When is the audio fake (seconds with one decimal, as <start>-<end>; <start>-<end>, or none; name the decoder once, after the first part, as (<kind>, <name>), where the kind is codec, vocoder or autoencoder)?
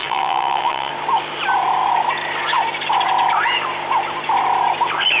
0.0-0.9 (vocoder, WaveNeXt)